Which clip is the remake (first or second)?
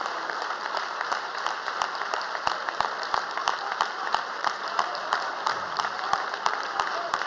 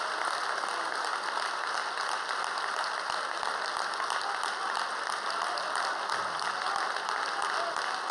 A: first